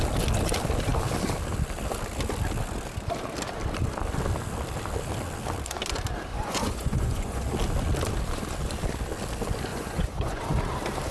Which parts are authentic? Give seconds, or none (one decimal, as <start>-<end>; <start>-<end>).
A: 0.0-6.3; 7.4-9.7; 10.4-11.1